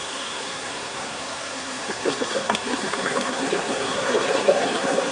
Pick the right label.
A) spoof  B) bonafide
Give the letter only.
A